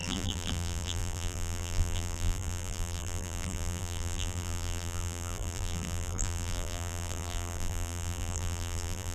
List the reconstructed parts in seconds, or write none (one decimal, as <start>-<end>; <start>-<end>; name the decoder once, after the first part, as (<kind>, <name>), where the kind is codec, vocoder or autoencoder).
0.0-9.1 (vocoder, BigVGAN v2)